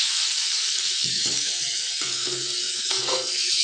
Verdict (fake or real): fake